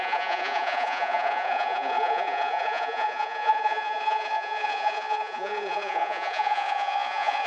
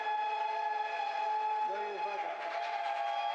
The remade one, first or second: first